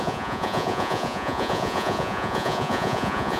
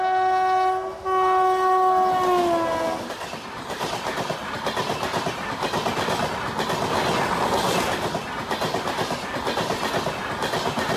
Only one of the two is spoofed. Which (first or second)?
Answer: first